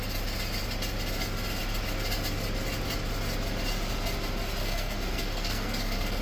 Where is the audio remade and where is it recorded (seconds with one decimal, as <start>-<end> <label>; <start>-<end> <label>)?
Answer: 0.0-4.6 recorded; 4.6-6.2 remade

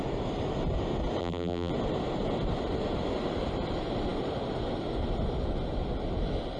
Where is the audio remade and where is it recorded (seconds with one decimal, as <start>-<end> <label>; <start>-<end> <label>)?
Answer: 0.0-1.2 recorded; 1.2-1.7 remade; 1.7-6.6 recorded

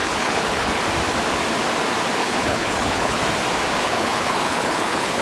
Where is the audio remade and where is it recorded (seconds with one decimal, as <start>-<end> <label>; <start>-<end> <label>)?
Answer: 0.0-0.8 remade; 0.8-2.2 recorded; 2.2-3.2 remade; 3.2-3.8 recorded; 3.8-5.2 remade

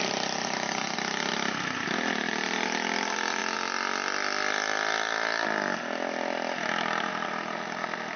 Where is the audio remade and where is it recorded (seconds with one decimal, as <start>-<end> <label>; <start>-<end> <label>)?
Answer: 0.0-8.2 recorded

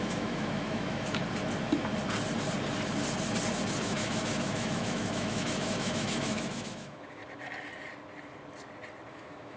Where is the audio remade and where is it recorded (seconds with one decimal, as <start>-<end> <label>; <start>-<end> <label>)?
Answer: 0.0-1.2 remade; 1.2-3.8 recorded; 3.8-7.2 remade; 7.2-9.1 recorded; 9.1-9.6 remade

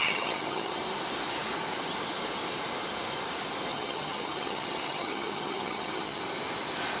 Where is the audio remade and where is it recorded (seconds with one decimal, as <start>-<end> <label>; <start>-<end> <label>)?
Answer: 0.0-0.8 remade; 0.8-3.7 recorded; 3.7-6.2 remade; 6.2-7.0 recorded